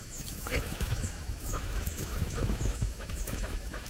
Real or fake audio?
fake